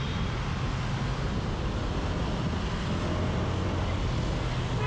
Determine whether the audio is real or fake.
real